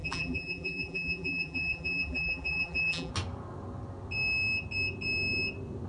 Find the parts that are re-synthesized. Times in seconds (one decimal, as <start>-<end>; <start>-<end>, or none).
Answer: 0.0-3.1